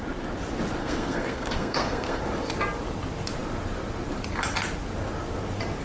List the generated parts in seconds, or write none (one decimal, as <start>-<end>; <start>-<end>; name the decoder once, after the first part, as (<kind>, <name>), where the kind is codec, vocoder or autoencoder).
0.8-2.2 (codec, SNAC)